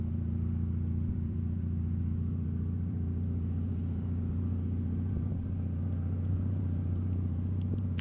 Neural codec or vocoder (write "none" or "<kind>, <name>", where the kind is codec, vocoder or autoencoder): vocoder, BigVGAN v2